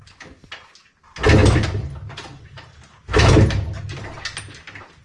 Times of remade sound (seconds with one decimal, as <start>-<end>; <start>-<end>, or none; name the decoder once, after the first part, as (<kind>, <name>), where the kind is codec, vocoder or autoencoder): none